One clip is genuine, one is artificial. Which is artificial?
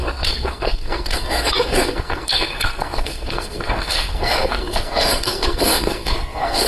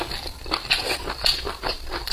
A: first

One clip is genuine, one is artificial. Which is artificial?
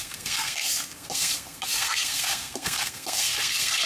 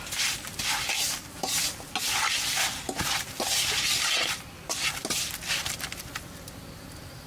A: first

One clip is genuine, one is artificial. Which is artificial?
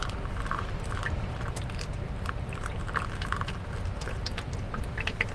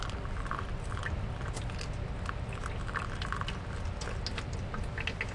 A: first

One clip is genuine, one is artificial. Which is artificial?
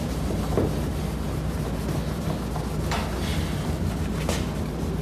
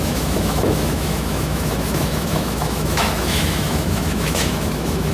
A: second